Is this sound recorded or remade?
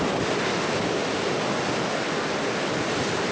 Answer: recorded